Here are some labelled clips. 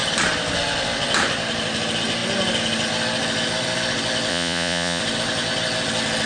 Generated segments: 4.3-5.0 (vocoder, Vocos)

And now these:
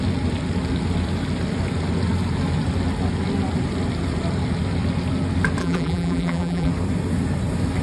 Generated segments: 5.6-6.7 (vocoder, BigVGAN v2)

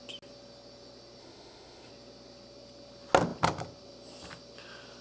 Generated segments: 1.2-1.9 (autoencoder, DAC-VAE)

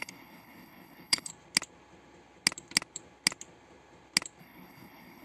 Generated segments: 0.0-1.3 (codec, HILCodec); 4.4-5.2

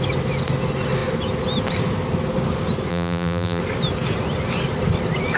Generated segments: 2.9-3.6 (vocoder, BigVGAN v2)

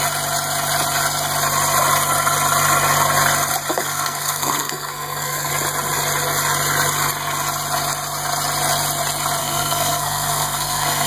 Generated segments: 3.7-5.5 (codec, SNAC); 9.4-11.1

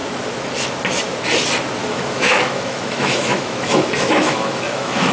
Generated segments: 1.8-5.1 (autoencoder, DAC-VAE)